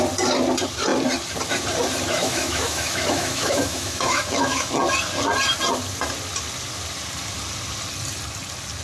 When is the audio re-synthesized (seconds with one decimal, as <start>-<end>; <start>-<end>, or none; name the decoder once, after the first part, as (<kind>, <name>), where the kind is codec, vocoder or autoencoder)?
2.2-4.7 (autoencoder, DAC-VAE)